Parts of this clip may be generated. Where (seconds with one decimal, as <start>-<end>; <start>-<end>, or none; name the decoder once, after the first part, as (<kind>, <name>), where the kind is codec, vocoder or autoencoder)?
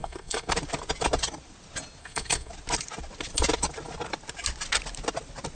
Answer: 0.0-0.5 (codec, SNAC); 2.0-2.5